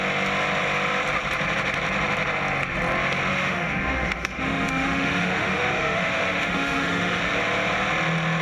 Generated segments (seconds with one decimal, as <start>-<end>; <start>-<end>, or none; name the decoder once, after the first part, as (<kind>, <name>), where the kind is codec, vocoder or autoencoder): 3.3-7.2 (autoencoder, DAC-VAE)